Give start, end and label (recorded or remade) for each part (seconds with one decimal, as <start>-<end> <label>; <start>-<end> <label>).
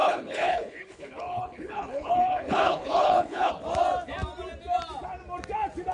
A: 0.0-3.5 remade; 3.5-5.9 recorded